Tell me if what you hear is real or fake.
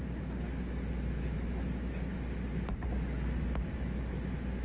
real